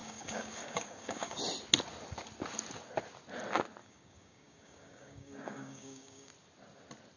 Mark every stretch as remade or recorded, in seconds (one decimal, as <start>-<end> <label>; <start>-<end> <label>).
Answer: 0.0-1.4 remade; 1.4-3.8 recorded; 3.8-6.3 remade; 6.3-7.2 recorded